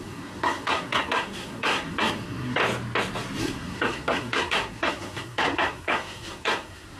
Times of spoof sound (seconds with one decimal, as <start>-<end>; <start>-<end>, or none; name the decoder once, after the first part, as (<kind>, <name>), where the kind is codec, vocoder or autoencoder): 0.0-2.6 (codec, SNAC); 3.4-7.0